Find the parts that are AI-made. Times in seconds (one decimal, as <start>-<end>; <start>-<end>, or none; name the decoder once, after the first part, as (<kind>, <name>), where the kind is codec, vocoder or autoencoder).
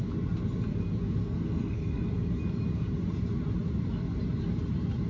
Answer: 1.2-2.3 (codec, SNAC)